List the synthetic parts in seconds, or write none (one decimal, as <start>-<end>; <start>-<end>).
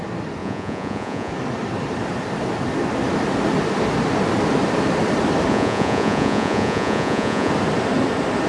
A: 0.4-1.3; 5.5-7.5